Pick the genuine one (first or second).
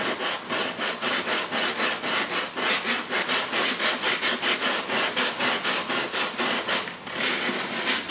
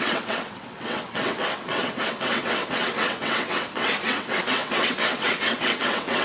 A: first